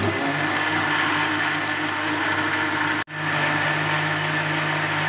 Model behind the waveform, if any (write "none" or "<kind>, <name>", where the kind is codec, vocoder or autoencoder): none